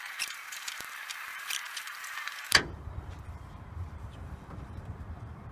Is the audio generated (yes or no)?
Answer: yes